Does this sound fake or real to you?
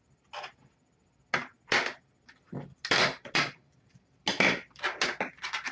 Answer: real